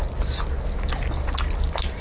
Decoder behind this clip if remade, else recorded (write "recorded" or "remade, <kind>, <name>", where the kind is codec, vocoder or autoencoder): recorded